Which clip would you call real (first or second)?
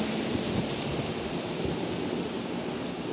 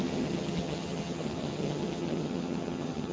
first